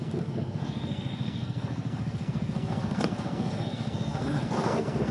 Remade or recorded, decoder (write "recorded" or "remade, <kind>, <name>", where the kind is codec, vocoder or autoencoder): remade, codec, SNAC